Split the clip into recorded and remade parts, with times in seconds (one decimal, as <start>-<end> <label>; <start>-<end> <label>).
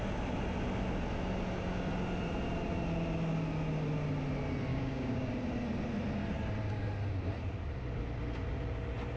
0.0-4.7 recorded; 4.7-5.3 remade; 5.3-9.2 recorded